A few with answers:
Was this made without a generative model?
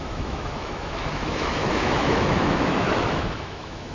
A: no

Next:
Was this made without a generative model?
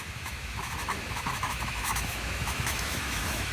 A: no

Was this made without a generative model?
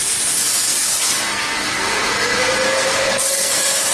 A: no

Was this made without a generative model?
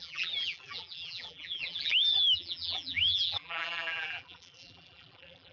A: no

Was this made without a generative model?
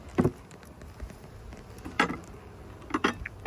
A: yes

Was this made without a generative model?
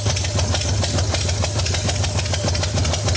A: yes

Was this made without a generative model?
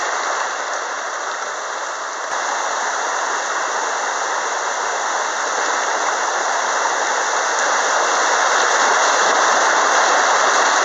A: yes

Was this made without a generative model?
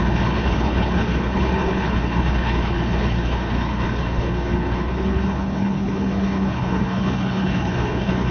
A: no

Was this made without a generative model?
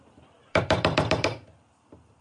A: no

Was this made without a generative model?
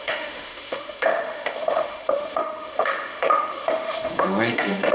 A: no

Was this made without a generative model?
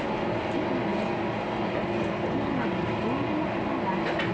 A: yes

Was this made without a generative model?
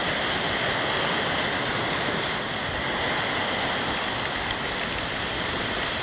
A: yes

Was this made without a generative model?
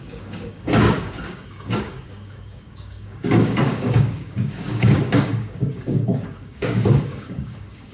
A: no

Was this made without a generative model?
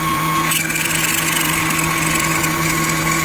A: yes